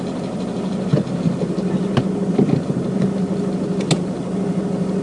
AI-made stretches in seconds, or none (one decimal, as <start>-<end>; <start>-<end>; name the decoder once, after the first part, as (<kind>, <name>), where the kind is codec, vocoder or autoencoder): none